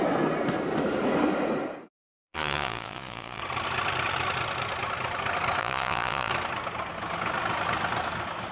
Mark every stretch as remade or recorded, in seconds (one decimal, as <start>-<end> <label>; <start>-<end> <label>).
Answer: 0.0-2.1 recorded; 2.1-3.4 remade; 3.4-5.6 recorded; 5.6-6.3 remade; 6.3-8.5 recorded